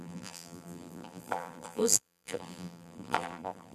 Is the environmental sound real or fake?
fake